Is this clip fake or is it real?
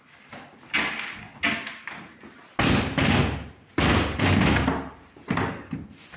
real